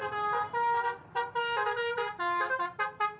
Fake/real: real